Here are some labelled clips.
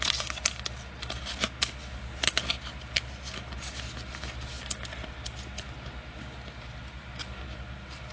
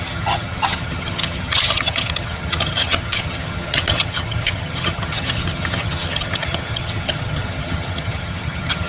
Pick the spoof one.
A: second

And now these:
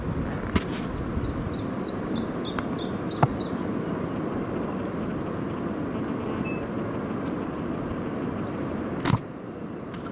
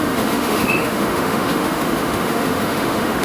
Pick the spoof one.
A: second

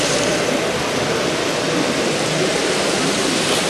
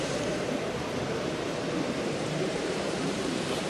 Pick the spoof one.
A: second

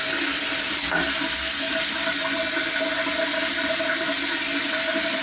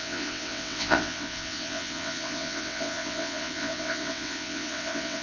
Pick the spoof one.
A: second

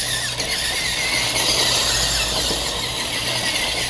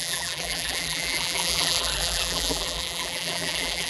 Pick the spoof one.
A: second